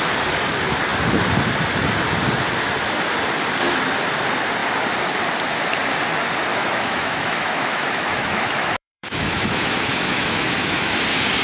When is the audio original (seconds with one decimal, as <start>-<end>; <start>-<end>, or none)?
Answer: 0.0-6.5; 11.0-11.4